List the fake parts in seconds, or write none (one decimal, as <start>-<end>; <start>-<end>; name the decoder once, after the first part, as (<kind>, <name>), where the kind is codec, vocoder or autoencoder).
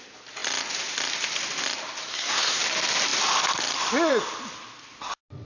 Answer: 2.1-2.6 (codec, SNAC)